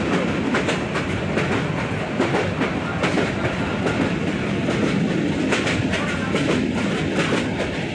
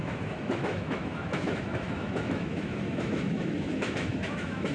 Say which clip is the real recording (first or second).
first